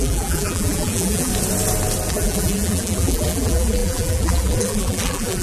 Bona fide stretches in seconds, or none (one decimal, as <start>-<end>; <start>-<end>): 1.3-2.1